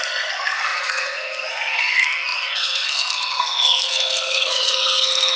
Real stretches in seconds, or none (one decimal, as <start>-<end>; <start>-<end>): none